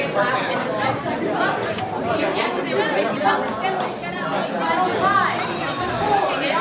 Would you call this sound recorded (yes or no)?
yes